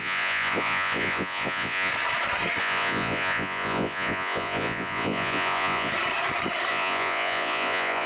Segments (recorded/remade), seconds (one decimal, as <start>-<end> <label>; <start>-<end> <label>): 0.0-1.9 remade; 1.9-2.6 recorded; 2.6-5.9 remade; 5.9-6.7 recorded; 6.7-8.1 remade